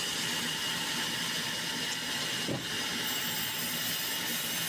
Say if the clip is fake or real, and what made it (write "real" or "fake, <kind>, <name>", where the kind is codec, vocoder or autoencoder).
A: real